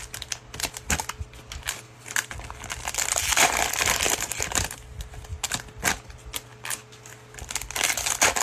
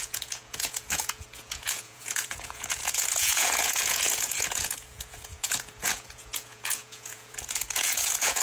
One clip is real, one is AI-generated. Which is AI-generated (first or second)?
second